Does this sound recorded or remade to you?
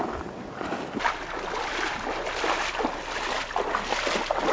recorded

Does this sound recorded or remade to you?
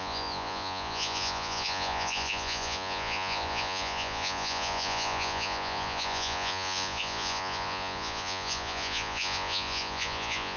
remade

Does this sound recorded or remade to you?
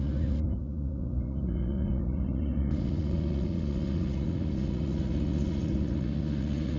remade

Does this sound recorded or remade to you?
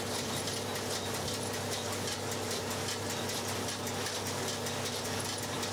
recorded